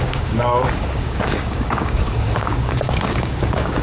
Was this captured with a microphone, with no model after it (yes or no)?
no